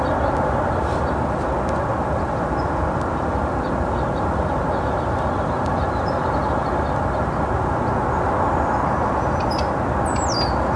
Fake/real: real